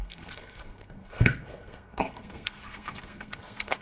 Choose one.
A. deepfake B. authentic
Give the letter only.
A